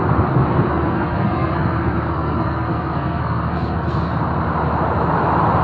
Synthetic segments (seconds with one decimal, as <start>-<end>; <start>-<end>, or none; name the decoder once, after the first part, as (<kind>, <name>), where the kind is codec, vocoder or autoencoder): 0.7-4.1 (codec, SNAC)